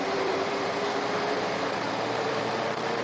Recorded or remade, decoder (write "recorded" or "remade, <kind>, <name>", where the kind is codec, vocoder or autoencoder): remade, vocoder, BigVGAN v2